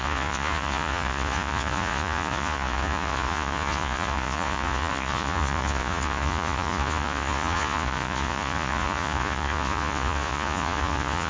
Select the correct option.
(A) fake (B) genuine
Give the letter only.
A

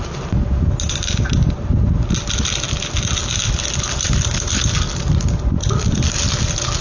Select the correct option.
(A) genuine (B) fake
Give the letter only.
A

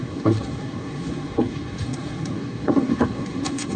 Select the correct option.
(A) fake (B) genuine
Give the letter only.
A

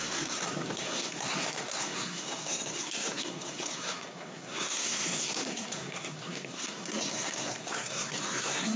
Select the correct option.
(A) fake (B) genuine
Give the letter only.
A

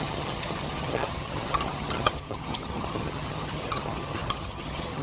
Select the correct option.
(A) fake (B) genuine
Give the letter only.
A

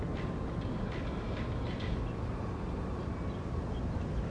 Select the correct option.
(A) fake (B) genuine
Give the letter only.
B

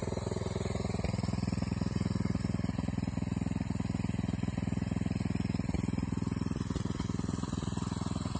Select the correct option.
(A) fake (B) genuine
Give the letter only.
B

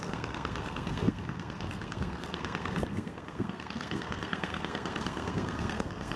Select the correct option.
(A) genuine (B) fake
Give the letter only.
B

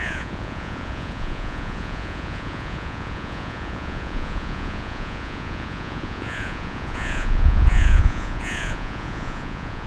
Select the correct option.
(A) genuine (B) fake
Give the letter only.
B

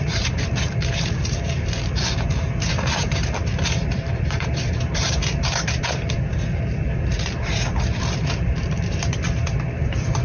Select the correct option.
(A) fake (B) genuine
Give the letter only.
A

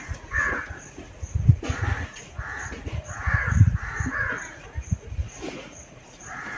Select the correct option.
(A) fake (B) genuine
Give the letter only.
A